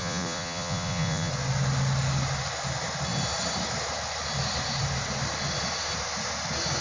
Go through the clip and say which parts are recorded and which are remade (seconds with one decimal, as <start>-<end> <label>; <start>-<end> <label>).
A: 0.0-1.3 remade; 1.3-6.8 recorded